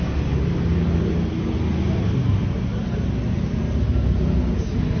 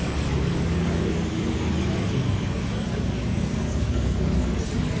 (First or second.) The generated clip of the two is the second